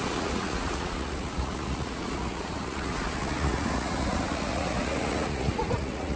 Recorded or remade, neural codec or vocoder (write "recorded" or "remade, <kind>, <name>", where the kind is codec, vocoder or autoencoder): remade, vocoder, Vocos